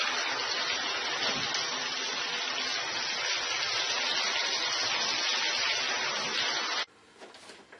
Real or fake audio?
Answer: real